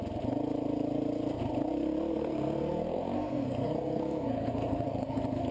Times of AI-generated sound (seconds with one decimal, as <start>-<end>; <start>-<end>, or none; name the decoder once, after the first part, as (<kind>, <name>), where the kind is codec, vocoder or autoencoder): 2.1-5.5 (codec, SNAC)